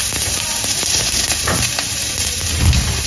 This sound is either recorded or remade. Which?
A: remade